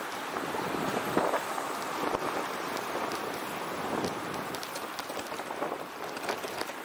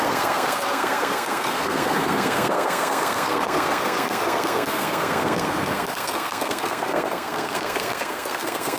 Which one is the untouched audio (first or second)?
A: first